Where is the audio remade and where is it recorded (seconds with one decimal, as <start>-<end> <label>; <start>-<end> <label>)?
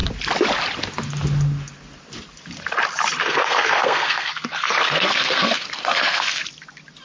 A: 0.0-3.2 recorded; 3.2-6.4 remade; 6.4-7.0 recorded